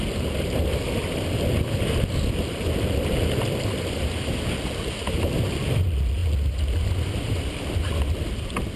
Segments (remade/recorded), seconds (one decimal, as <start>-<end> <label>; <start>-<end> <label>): 0.0-8.8 recorded